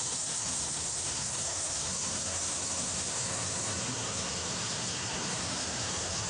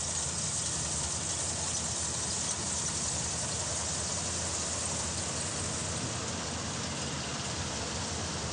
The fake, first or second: first